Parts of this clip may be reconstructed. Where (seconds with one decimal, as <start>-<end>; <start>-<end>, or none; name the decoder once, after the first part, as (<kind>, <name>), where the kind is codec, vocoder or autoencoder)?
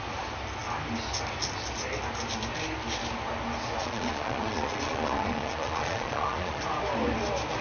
3.8-6.6 (vocoder, Vocos)